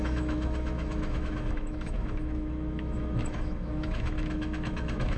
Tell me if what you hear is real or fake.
fake